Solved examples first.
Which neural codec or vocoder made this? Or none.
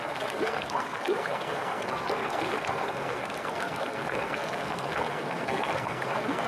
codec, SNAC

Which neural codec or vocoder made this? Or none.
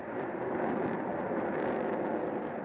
none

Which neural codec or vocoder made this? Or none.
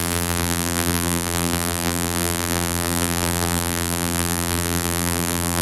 vocoder, BigVGAN v2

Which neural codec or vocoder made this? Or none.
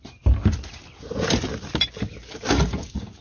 none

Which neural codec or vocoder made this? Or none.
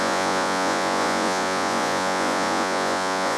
vocoder, Vocos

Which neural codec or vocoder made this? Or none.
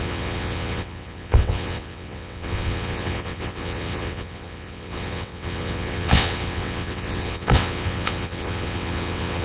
vocoder, WaveNeXt